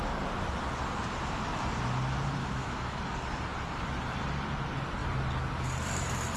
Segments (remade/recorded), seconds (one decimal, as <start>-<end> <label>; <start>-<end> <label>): 0.0-2.4 recorded; 2.4-3.0 remade; 3.0-6.4 recorded